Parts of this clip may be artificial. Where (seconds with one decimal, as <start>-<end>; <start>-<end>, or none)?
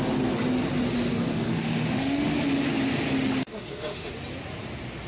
1.3-2.3; 3.4-4.1